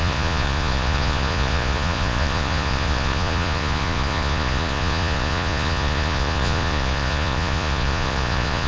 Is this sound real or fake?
fake